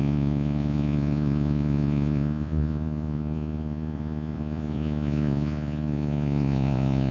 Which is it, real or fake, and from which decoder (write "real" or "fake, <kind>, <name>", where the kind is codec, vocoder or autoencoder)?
fake, vocoder, Vocos